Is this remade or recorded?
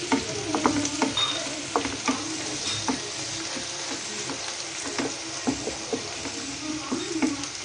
recorded